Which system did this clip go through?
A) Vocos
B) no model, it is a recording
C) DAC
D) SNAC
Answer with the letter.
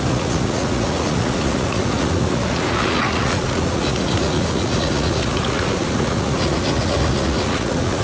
A